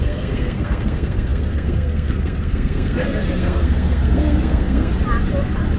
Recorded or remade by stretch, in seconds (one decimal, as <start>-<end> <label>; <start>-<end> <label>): 0.0-4.9 remade; 4.9-5.8 recorded